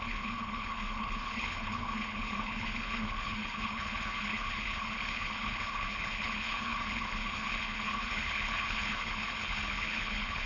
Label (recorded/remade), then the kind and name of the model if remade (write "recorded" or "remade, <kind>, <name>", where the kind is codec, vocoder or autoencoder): remade, codec, HILCodec